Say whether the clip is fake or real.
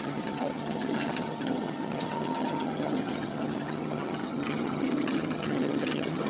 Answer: fake